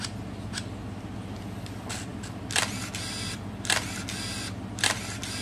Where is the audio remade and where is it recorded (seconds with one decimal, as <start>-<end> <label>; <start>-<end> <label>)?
0.0-5.4 recorded